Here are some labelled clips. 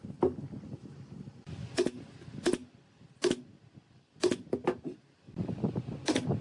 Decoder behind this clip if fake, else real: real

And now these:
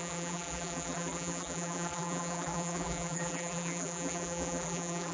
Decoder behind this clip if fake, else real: fake, vocoder, BigVGAN v2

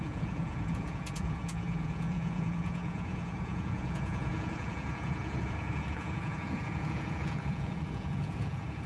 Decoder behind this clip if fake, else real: fake, vocoder, Vocos